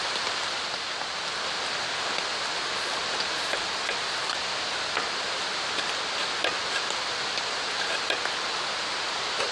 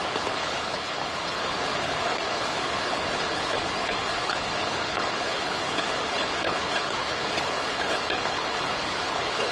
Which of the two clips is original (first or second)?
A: first